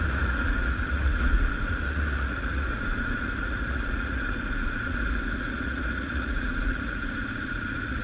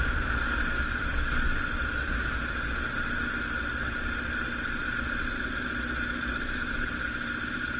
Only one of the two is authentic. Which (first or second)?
second